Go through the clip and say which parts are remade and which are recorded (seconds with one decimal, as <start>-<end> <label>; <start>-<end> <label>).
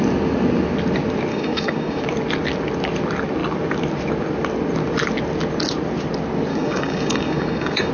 0.0-1.3 recorded; 1.3-2.0 remade; 2.0-6.5 recorded; 6.5-7.9 remade